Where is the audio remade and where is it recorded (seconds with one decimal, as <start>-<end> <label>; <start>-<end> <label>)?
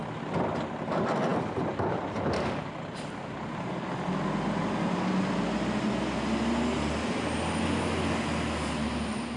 0.0-9.4 recorded